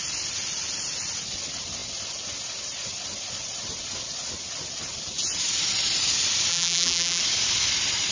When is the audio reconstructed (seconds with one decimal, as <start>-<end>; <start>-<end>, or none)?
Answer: 6.5-7.2